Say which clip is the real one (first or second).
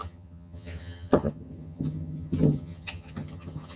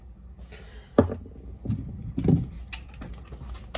second